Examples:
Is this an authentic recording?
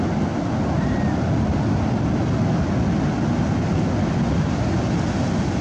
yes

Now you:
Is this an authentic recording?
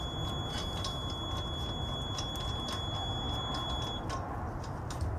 yes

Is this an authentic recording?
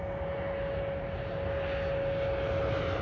yes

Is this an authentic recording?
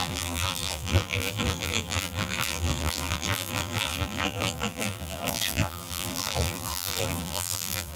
no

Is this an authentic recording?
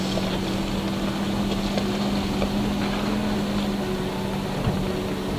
yes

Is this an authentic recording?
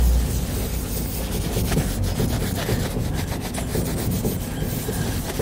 yes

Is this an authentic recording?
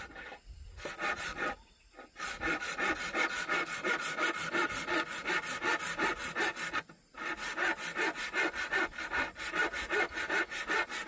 yes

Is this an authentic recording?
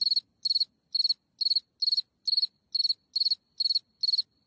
yes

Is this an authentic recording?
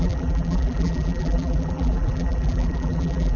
no